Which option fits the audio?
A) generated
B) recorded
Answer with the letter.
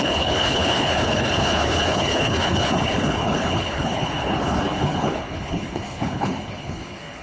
A